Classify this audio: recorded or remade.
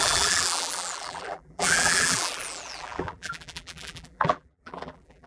remade